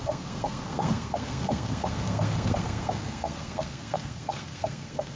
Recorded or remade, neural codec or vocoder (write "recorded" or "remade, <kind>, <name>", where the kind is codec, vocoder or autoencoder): remade, codec, SNAC